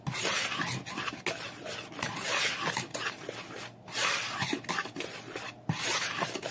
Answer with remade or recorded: recorded